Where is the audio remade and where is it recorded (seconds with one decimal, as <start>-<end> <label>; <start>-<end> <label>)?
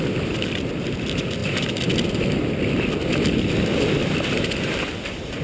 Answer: 0.0-5.4 recorded